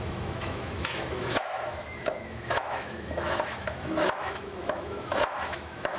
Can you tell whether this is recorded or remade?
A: remade